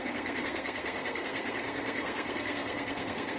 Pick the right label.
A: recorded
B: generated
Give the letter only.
B